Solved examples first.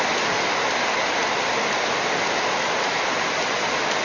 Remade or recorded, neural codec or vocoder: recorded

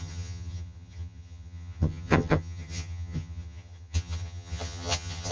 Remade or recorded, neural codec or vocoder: remade, vocoder, HiFi-GAN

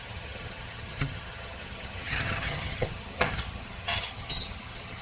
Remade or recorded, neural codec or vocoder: remade, vocoder, HiFi-GAN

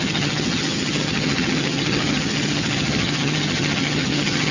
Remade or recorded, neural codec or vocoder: remade, vocoder, HiFi-GAN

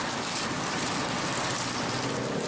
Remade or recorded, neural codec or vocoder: recorded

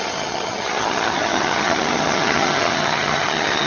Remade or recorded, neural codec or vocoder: remade, vocoder, HiFi-GAN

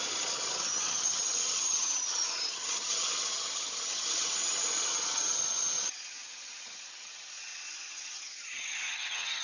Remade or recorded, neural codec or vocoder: remade, vocoder, HiFi-GAN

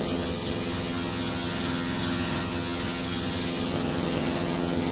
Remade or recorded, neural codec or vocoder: remade, vocoder, HiFi-GAN